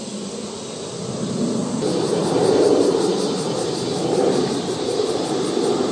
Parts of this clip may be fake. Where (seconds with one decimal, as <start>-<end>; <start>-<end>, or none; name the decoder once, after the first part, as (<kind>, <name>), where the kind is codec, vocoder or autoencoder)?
1.6-5.1 (vocoder, BigVGAN v2)

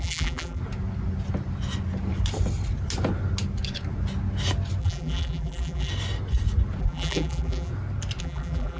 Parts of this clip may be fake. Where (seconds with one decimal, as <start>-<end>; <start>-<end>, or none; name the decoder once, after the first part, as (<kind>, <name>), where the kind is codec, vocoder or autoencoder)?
0.0-0.6 (vocoder, BigVGAN v2); 4.8-5.9; 6.8-7.7; 8.2-8.8

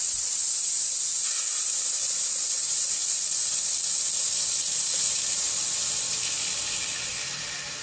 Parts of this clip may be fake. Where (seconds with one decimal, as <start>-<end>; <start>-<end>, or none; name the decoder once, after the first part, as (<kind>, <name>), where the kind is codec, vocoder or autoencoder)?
7.1-7.8 (vocoder, BigVGAN v2)

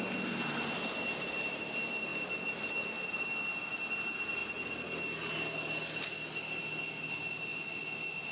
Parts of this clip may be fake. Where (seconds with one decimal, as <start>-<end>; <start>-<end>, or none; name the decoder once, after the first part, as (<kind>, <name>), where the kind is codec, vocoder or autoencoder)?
4.4-5.0 (vocoder, BigVGAN v2)

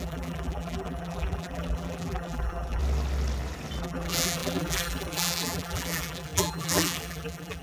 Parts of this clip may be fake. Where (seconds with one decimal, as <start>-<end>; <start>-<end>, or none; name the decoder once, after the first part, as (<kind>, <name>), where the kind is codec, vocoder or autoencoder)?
0.0-2.8 (vocoder, BigVGAN v2); 3.8-7.6

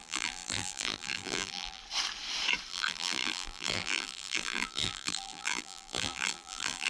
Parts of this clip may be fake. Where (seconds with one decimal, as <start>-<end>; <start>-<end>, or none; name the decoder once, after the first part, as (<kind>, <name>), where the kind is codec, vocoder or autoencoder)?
0.0-1.8 (vocoder, BigVGAN v2); 2.7-6.9

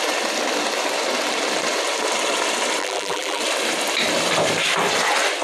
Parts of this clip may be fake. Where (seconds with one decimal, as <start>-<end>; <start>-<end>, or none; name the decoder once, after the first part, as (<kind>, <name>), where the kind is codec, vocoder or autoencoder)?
2.8-3.4 (vocoder, BigVGAN v2)

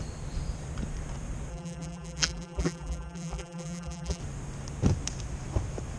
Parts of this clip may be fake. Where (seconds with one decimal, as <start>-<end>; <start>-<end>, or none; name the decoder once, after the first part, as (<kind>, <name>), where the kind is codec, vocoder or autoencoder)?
1.5-4.2 (vocoder, BigVGAN v2)